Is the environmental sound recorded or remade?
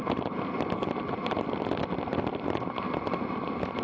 recorded